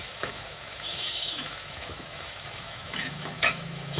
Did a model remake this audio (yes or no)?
yes